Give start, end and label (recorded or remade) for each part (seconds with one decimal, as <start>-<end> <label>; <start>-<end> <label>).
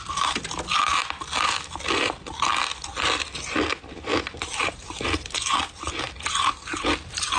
0.0-7.4 recorded